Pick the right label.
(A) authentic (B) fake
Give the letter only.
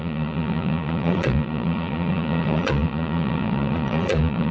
B